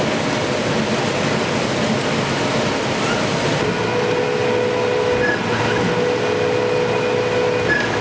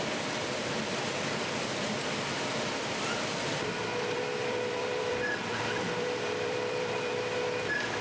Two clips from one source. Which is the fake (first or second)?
second